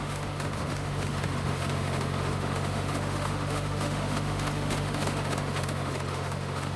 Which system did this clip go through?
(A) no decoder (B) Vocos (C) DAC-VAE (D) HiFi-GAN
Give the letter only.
C